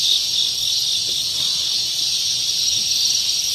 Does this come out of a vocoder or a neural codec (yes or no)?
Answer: no